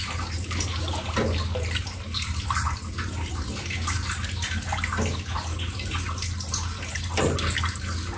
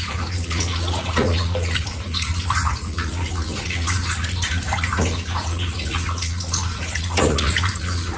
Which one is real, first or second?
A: first